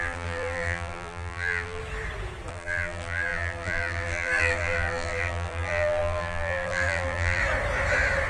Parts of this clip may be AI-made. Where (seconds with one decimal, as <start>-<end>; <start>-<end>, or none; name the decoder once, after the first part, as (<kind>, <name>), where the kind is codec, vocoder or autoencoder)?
0.0-1.8 (vocoder, BigVGAN v2); 2.5-7.4